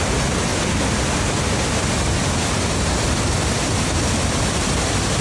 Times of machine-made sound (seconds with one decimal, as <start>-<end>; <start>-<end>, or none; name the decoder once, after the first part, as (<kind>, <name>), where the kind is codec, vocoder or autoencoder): none